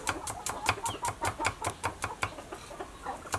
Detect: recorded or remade recorded